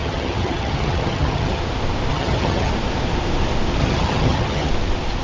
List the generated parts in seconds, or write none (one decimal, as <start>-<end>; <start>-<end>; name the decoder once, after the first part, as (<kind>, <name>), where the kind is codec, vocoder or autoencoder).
0.0-1.6 (vocoder, HiFi-GAN); 2.1-2.7; 3.8-4.7